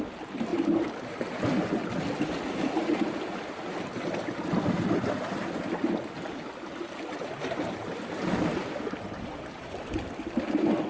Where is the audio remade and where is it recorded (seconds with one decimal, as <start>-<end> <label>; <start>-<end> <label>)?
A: 0.0-10.9 recorded